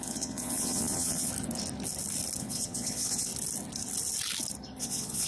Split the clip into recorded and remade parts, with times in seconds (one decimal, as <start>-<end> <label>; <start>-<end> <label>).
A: 0.0-1.3 remade; 1.3-2.4 recorded; 2.4-3.3 remade; 3.3-4.8 recorded; 4.8-5.3 remade